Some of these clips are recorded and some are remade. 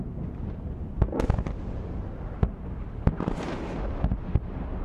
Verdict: recorded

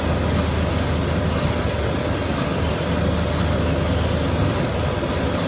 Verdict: recorded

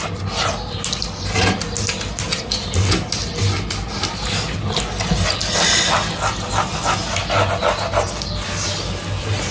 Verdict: recorded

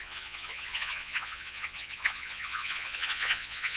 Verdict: remade